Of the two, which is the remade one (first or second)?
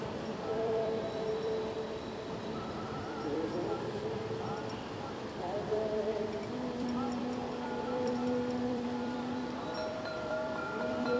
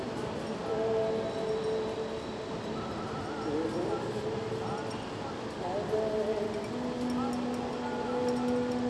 first